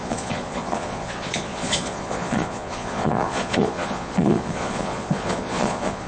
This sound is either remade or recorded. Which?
remade